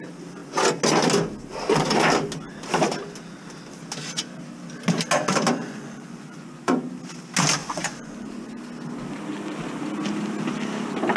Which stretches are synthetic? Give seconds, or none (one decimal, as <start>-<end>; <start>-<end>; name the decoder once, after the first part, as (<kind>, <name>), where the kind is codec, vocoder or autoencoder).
5.6-6.9 (vocoder, Vocos); 7.6-8.6